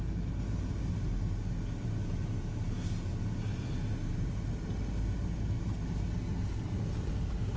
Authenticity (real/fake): real